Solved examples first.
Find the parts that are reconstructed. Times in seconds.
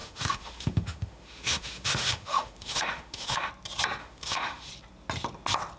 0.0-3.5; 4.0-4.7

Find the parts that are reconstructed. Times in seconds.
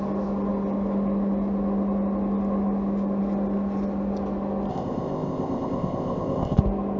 4.7-6.6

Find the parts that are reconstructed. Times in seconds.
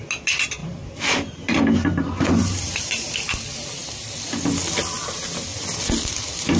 0.6-3.1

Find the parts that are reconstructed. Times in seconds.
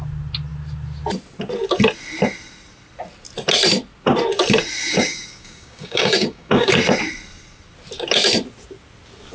4.9-6.7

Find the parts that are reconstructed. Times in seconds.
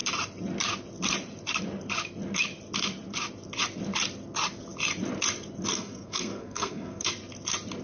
5.7-7.1